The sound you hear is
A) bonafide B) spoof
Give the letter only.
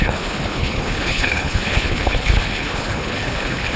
B